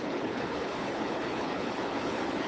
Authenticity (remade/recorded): remade